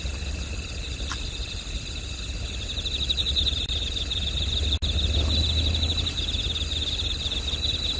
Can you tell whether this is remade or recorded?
recorded